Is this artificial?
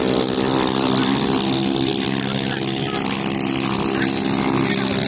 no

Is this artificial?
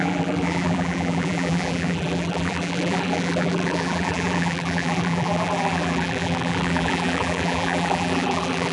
yes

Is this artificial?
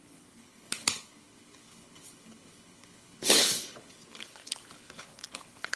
yes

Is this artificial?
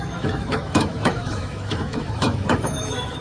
yes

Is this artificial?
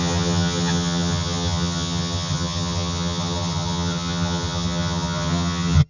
yes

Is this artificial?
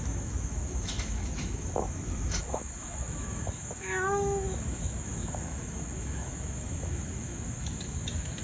yes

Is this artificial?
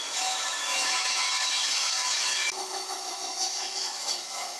yes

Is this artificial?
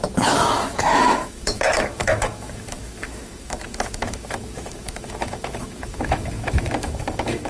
yes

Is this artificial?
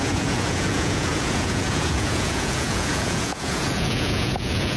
yes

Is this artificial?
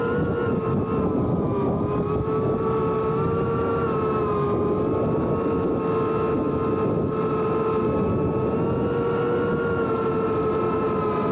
no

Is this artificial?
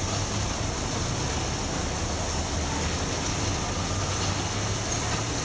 no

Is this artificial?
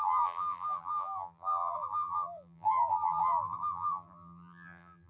yes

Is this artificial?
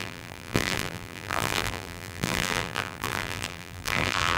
yes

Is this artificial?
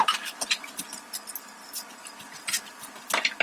no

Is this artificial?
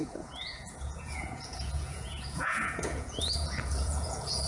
yes